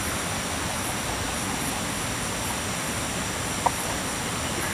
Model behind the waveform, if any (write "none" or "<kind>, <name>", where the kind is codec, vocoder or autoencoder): none